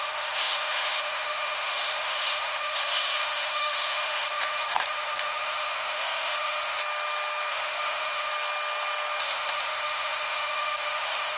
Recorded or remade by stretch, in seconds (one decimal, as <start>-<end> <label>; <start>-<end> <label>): 0.0-6.8 remade; 6.8-7.5 recorded; 7.5-8.3 remade; 8.3-9.2 recorded; 9.2-11.4 remade